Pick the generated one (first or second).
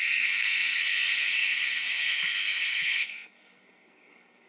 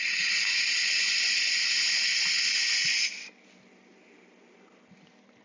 first